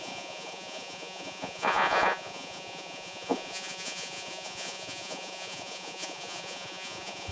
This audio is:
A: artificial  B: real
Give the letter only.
A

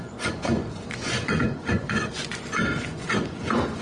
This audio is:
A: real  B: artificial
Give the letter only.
B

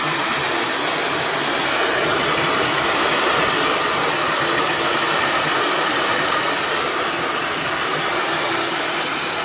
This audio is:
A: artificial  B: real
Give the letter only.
B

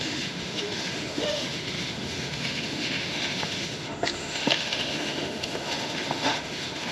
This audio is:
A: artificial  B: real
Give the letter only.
A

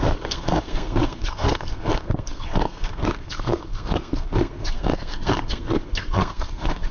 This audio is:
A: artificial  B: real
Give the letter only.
A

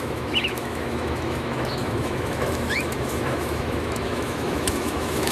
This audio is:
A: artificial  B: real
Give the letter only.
A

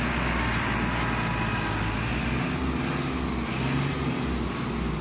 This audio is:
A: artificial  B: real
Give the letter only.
B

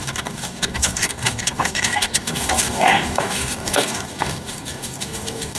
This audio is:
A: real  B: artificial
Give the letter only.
B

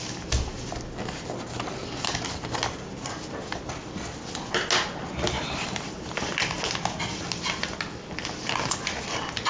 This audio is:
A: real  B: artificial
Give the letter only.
A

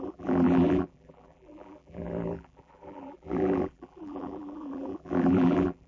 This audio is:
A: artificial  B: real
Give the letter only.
A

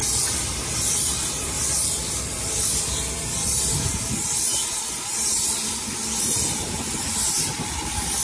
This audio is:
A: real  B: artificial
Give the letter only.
B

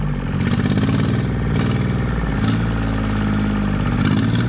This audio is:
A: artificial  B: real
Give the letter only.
B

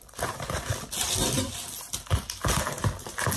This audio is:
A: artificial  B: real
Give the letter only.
B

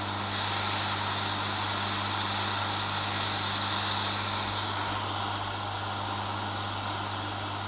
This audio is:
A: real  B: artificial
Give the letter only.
A